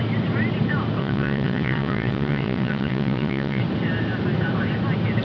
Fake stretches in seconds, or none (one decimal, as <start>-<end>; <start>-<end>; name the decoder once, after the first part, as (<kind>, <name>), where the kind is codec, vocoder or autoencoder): 1.0-3.6 (vocoder, WaveNeXt)